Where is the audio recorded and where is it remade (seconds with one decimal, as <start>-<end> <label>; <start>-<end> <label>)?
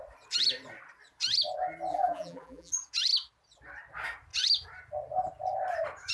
0.0-1.9 recorded; 1.9-2.7 remade; 2.7-6.1 recorded